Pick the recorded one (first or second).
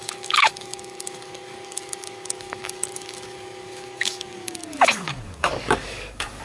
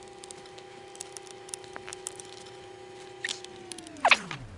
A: second